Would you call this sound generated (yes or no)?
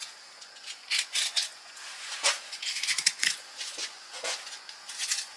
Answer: yes